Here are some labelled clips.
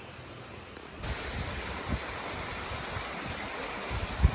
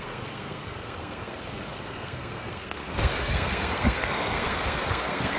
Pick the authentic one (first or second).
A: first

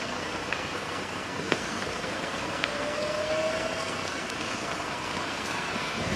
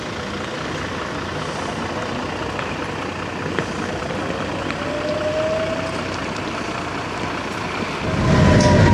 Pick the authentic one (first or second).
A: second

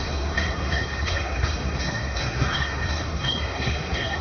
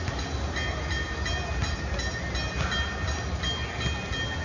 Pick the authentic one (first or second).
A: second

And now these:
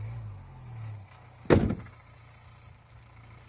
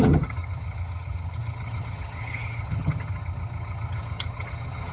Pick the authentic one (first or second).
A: first